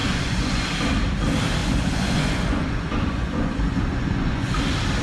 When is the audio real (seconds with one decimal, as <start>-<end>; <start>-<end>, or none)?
0.7-1.6; 4.6-5.0